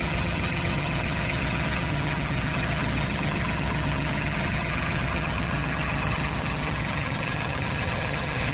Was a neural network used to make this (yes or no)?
yes